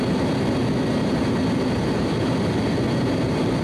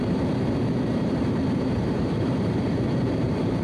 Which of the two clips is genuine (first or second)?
first